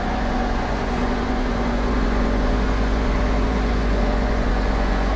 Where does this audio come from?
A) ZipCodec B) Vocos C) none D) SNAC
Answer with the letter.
B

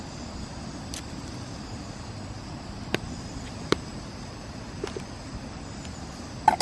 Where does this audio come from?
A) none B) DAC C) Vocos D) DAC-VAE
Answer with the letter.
A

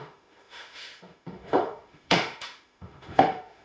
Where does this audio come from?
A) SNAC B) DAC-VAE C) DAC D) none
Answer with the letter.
B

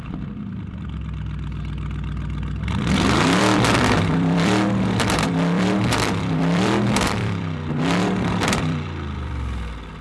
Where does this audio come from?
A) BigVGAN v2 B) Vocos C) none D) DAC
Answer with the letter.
A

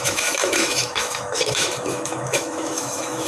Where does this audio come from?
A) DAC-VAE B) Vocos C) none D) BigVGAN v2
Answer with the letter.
A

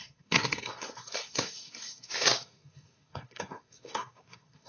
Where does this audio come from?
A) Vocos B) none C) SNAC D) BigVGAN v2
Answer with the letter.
C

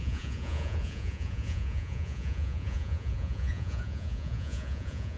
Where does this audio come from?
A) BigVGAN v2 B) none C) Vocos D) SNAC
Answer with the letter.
C